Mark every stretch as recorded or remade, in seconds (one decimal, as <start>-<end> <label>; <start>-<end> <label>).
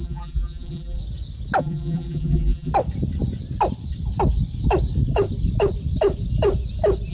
0.0-1.0 remade; 1.0-1.6 recorded; 1.6-2.7 remade; 2.7-7.1 recorded